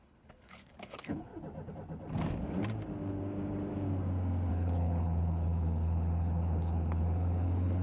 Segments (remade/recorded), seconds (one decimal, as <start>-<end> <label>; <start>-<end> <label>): 0.0-1.3 remade; 1.3-4.5 recorded; 4.5-7.8 remade